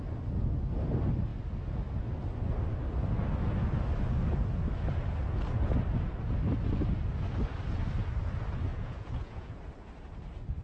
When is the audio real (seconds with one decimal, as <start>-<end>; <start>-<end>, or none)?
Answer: 0.0-8.7; 9.6-10.6